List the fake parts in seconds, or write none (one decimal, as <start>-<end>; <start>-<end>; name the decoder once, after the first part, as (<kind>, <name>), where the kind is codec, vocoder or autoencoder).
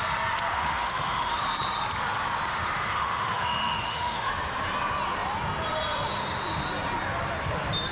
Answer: 0.5-1.4 (autoencoder, DAC-VAE); 2.5-4.3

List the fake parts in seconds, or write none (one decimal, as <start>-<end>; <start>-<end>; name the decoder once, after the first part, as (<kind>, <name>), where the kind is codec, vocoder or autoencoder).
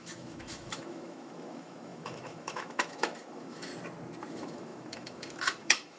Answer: 0.0-3.7 (autoencoder, DAC-VAE); 4.3-6.0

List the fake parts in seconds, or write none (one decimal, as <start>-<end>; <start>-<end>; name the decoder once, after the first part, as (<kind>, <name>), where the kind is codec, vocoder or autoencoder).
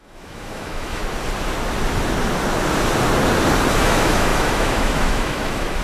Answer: 0.0-1.0 (autoencoder, DAC-VAE); 3.7-5.8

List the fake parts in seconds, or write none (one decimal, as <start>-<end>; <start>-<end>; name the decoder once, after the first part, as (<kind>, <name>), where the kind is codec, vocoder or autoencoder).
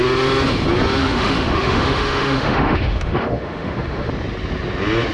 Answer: 1.0-4.1 (autoencoder, DAC-VAE)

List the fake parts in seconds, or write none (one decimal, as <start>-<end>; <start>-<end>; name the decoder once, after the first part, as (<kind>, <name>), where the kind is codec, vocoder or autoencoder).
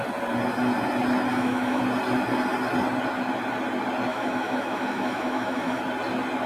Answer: 1.3-1.8 (autoencoder, DAC-VAE); 4.1-5.8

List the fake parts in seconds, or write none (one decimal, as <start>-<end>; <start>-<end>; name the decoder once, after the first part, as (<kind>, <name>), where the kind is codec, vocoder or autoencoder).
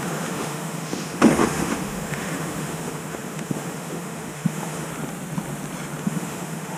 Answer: 0.0-4.9 (autoencoder, DAC-VAE); 6.0-6.8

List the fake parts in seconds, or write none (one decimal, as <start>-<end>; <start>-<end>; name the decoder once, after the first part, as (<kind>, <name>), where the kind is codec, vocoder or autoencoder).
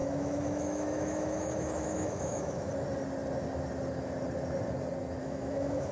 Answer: 0.0-2.7 (autoencoder, DAC-VAE); 5.2-5.9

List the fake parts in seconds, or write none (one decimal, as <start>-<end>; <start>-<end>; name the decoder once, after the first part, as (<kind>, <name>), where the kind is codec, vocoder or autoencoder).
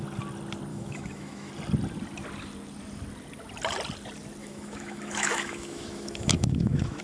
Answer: 0.7-1.5 (autoencoder, DAC-VAE); 4.4-7.0